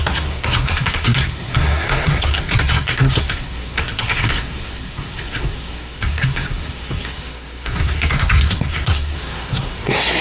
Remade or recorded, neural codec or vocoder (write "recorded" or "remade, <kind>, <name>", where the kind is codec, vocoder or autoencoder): remade, codec, SNAC